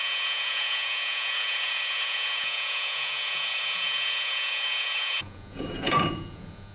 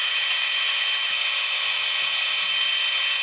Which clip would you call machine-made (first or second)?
first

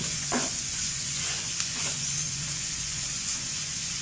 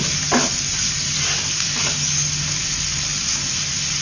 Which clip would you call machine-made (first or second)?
first